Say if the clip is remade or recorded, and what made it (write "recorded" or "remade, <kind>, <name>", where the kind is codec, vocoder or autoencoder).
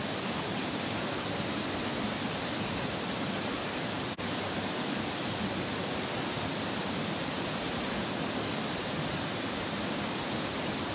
recorded